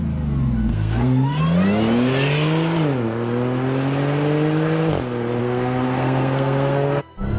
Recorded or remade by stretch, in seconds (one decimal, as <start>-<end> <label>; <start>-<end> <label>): 0.0-0.7 recorded; 0.7-1.4 remade; 1.4-5.4 recorded; 5.4-7.0 remade; 7.0-7.4 recorded